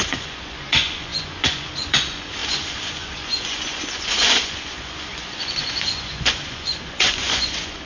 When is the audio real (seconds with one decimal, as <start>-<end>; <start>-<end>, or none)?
none